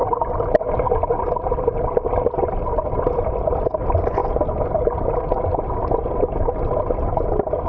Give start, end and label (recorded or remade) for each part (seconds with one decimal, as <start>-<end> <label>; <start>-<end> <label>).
0.0-7.7 recorded